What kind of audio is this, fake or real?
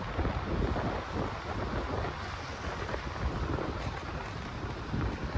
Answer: real